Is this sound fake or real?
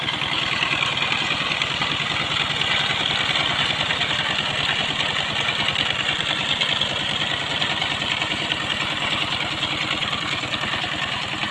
fake